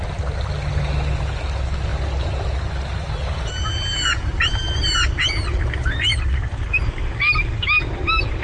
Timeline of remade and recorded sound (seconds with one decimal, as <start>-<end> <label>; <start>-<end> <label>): 0.0-8.4 recorded